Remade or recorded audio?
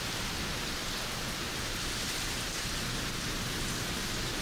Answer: recorded